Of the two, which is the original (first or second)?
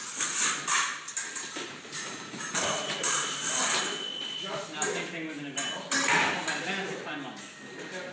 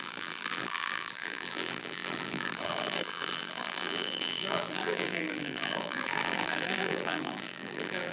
first